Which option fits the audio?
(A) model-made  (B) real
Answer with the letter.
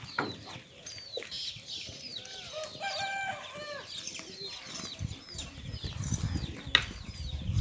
B